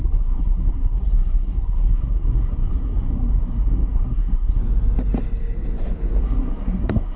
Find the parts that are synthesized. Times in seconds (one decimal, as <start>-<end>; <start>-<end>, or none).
0.0-4.6; 6.2-7.2